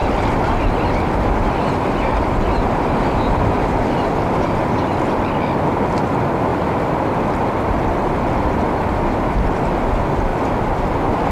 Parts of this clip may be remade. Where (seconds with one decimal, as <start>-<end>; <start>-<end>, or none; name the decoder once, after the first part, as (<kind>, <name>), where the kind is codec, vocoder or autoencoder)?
0.0-3.9 (vocoder, BigVGAN v2); 6.5-7.7